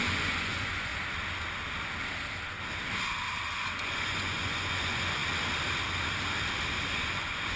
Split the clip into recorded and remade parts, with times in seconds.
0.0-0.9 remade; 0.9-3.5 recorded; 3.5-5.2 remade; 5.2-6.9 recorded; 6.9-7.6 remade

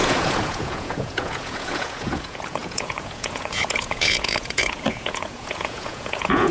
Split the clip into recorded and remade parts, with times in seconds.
0.0-6.5 remade

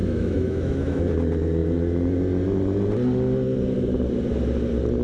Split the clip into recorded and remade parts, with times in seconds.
0.0-1.0 remade; 1.0-5.0 recorded

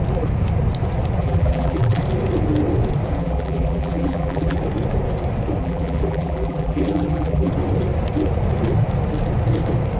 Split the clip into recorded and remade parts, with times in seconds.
0.0-1.2 recorded; 1.2-2.0 remade; 2.0-3.2 recorded; 3.2-4.6 remade; 4.6-5.6 recorded; 5.6-7.5 remade; 7.5-10.0 recorded

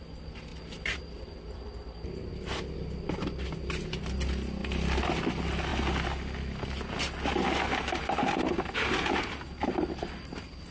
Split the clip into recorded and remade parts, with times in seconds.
0.0-10.7 recorded

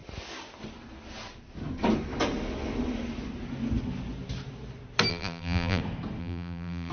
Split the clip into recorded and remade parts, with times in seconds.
0.0-5.1 recorded; 5.1-5.8 remade; 5.8-6.2 recorded; 6.2-6.9 remade

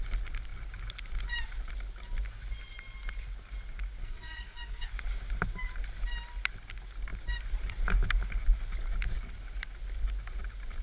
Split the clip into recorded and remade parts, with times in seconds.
0.0-4.0 recorded; 4.0-4.9 remade; 4.9-10.8 recorded